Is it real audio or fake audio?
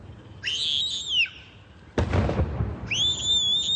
real